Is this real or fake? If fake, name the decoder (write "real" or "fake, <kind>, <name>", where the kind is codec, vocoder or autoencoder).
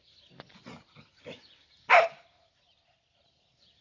real